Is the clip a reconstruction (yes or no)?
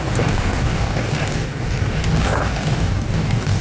yes